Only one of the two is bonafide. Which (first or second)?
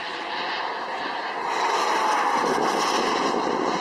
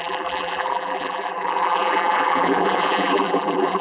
first